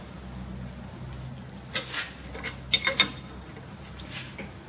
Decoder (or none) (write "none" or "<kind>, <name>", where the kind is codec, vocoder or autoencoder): none